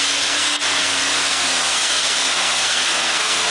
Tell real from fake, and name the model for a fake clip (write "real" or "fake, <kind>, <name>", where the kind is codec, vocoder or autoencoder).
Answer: fake, codec, SNAC